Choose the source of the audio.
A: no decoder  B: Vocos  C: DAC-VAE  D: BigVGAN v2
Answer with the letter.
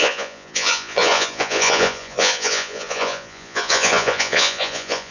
B